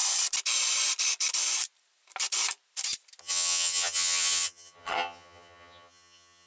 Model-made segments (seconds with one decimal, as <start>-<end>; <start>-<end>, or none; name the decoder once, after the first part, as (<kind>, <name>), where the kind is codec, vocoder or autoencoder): 3.2-6.5 (vocoder, HiFi-GAN)